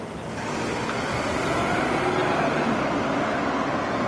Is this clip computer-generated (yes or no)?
no